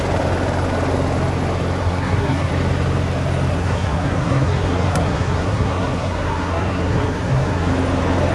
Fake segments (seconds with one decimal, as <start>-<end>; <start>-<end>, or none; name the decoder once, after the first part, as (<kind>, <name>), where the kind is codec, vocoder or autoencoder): 1.8-2.5 (codec, SNAC); 3.5-7.7